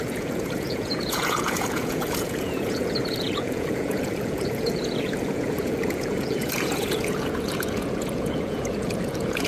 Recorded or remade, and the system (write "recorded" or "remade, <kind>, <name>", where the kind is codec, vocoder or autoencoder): remade, vocoder, Vocos